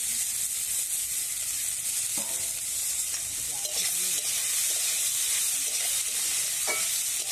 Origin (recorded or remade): recorded